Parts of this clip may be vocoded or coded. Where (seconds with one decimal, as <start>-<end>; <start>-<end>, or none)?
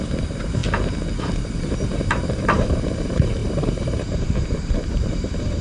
0.0-0.6; 1.3-5.6